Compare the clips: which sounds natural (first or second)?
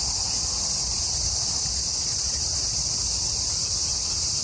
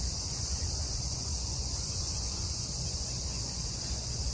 first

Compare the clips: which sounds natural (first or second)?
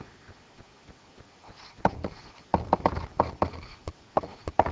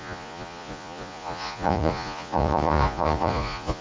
first